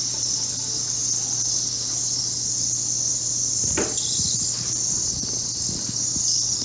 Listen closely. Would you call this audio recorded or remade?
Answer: recorded